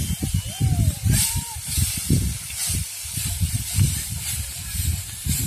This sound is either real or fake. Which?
fake